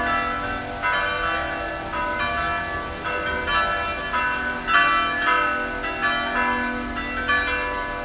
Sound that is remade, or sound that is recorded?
recorded